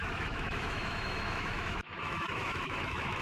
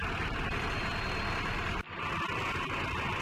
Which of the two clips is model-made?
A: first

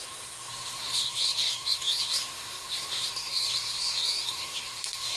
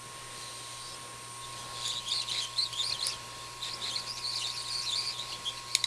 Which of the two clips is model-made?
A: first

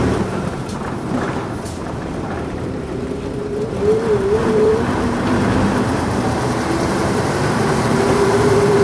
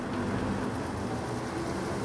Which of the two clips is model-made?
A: first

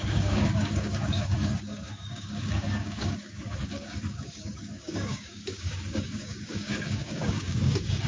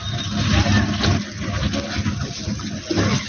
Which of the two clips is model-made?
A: first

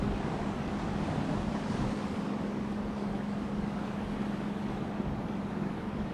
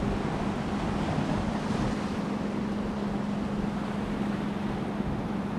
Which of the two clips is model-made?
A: first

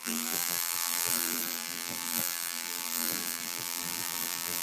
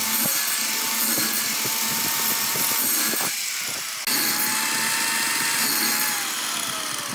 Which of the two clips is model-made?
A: first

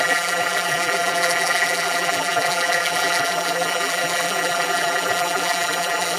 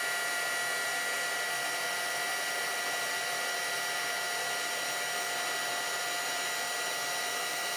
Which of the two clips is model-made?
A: first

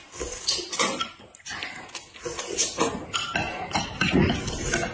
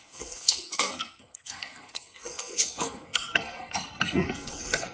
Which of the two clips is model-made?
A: second